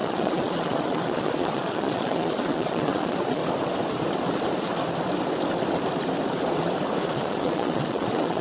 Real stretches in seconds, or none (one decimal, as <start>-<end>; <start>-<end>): 3.4-7.0